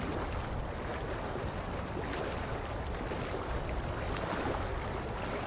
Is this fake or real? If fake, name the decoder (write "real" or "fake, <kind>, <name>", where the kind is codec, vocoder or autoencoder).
real